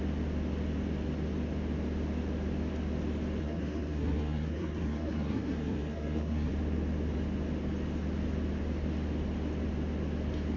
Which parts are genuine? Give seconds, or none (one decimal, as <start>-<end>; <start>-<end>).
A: 0.0-3.4; 6.5-10.6